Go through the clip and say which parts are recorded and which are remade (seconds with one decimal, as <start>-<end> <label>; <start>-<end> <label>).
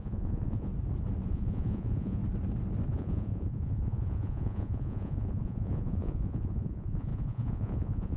0.0-0.7 remade; 0.7-1.3 recorded; 1.3-2.2 remade; 2.2-2.9 recorded; 2.9-8.2 remade